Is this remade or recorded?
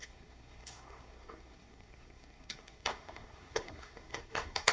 remade